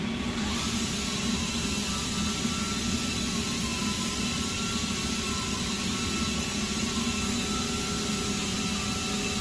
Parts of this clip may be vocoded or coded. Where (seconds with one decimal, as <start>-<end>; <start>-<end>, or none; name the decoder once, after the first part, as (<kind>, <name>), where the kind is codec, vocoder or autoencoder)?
none